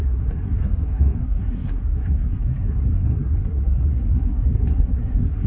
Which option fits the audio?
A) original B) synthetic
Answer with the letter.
B